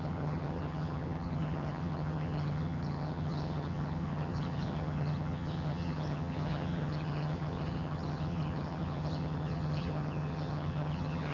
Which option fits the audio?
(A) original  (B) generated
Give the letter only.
B